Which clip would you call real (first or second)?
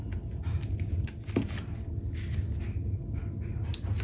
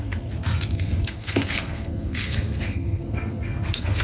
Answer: first